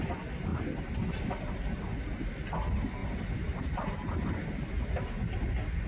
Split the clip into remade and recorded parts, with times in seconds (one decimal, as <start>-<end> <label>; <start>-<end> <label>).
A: 0.0-0.5 recorded; 0.5-1.2 remade; 1.2-3.0 recorded; 3.0-4.3 remade; 4.3-5.9 recorded